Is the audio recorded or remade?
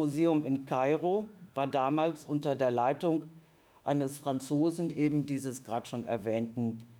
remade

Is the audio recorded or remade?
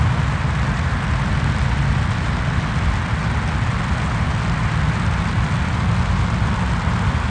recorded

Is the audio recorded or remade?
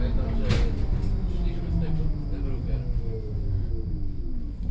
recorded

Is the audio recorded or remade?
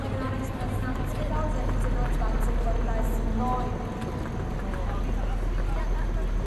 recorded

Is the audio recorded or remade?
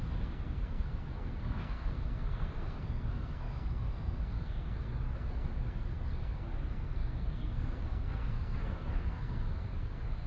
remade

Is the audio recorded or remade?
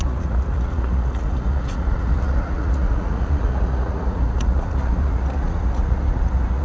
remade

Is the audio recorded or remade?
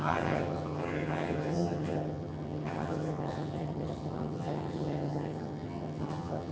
remade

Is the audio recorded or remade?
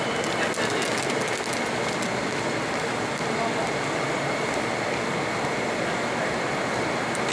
recorded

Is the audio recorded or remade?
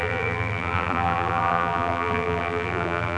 remade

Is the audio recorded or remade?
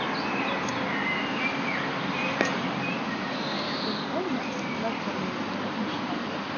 recorded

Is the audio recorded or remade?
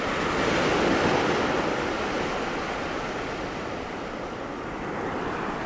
recorded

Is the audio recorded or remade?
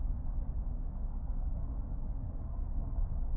remade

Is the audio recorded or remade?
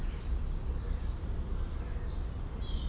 recorded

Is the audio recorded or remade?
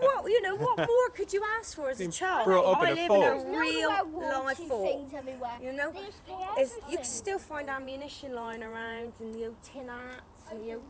remade